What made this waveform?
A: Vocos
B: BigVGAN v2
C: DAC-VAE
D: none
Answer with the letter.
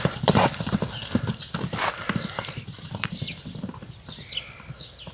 D